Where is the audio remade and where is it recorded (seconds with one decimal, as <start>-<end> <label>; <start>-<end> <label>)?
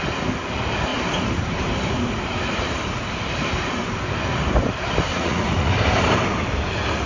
0.0-5.1 recorded; 5.1-5.7 remade; 5.7-7.1 recorded